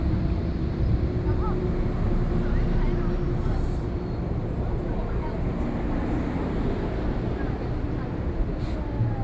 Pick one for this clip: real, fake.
real